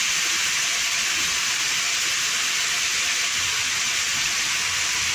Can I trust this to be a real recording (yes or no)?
yes